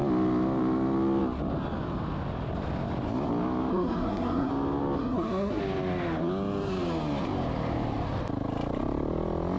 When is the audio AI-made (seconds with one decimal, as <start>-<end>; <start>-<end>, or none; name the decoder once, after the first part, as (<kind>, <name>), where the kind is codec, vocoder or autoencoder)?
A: 3.7-4.5 (codec, SNAC); 5.0-5.6